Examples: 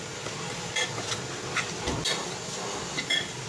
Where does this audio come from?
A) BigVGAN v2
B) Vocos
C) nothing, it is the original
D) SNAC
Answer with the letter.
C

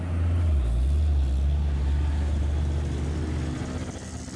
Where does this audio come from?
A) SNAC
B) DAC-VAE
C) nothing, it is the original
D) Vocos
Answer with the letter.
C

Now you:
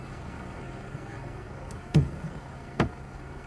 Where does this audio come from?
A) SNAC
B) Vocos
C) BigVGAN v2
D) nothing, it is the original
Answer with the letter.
A